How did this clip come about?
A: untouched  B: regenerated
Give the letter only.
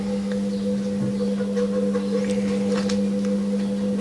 A